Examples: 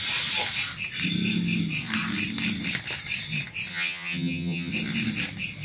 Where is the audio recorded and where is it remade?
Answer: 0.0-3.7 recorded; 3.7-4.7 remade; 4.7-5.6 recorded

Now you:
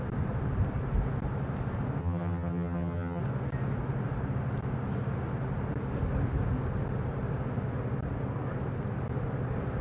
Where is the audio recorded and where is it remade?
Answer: 0.0-2.0 recorded; 2.0-3.2 remade; 3.2-9.8 recorded

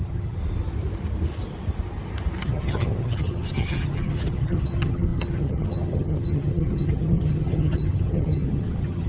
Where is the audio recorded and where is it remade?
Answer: 0.0-0.4 remade; 0.4-2.4 recorded; 2.4-9.1 remade

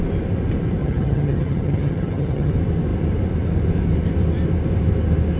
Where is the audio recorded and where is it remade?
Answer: 0.0-0.8 recorded; 0.8-2.5 remade; 2.5-5.4 recorded